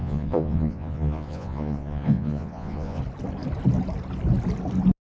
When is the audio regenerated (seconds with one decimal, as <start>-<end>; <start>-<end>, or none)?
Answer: 0.0-3.0

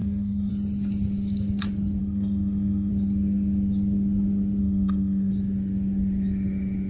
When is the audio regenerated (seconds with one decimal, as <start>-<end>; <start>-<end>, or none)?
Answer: 0.0-0.5; 2.0-2.9; 4.6-5.3

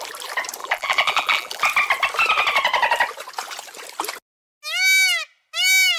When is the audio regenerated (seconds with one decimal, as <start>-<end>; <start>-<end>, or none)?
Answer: 0.6-1.6